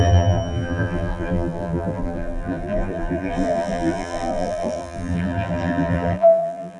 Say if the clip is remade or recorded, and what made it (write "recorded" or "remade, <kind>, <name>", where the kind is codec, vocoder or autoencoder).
remade, vocoder, BigVGAN v2